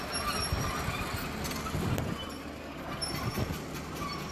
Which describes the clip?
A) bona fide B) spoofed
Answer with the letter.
A